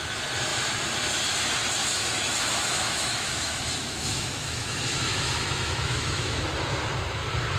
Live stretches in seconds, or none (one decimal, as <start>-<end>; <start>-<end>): 0.0-1.8; 6.4-7.6